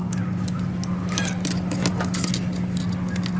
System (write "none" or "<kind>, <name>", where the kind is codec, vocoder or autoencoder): none